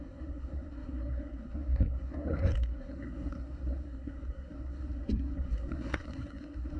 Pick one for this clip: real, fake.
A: fake